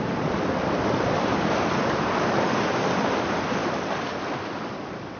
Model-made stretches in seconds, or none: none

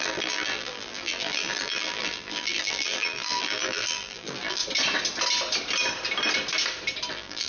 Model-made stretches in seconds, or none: 0.0-4.6; 7.1-7.5

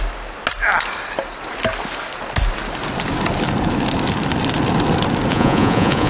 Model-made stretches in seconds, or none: 5.3-6.1

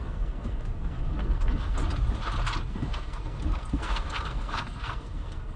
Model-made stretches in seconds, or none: 0.0-1.8; 2.7-5.6

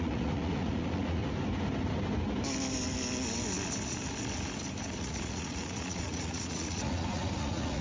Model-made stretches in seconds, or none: 0.0-1.2; 5.0-7.8

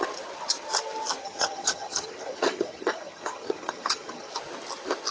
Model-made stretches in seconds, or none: 1.2-4.3

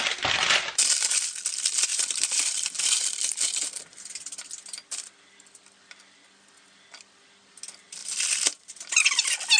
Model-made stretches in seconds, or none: 1.9-5.8; 8.0-8.6